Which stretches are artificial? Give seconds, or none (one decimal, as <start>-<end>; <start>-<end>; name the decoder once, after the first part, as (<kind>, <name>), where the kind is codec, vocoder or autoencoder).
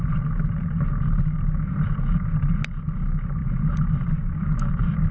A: 3.4-5.1 (vocoder, BigVGAN v2)